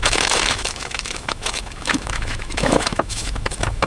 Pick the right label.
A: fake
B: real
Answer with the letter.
A